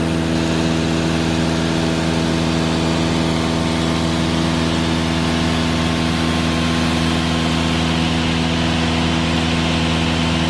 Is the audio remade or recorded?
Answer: recorded